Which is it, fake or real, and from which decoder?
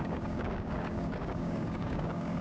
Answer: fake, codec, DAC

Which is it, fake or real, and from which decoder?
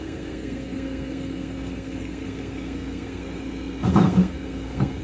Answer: fake, codec, SNAC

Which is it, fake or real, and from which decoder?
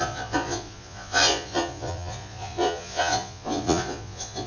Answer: fake, vocoder, Vocos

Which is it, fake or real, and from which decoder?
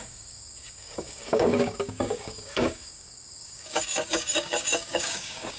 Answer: fake, codec, DAC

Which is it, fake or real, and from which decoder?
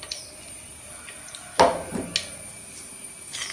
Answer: real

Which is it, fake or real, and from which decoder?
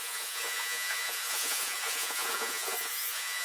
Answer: fake, vocoder, Vocos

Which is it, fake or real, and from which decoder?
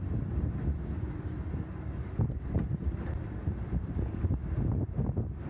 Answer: fake, vocoder, BigVGAN v2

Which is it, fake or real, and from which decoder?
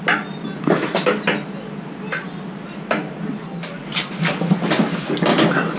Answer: real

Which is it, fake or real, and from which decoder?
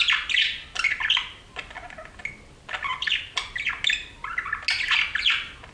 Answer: real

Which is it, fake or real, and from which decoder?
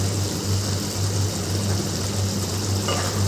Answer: real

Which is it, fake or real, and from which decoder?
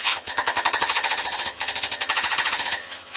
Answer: fake, vocoder, HiFi-GAN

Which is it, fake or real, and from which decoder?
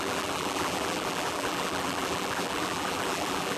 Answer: fake, vocoder, BigVGAN v2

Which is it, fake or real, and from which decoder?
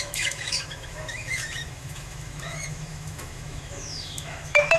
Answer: fake, autoencoder, DAC-VAE